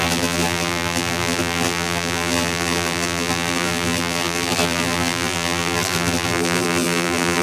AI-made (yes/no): yes